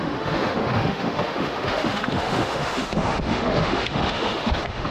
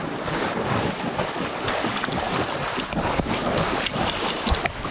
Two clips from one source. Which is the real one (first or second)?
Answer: second